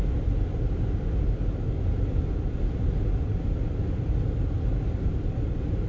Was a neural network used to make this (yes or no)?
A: no